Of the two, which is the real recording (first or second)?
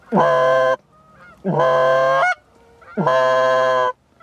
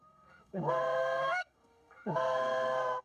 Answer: first